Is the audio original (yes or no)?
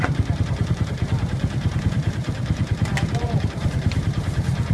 no